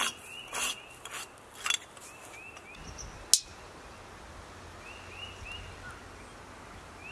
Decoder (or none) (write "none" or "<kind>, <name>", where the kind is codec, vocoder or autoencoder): none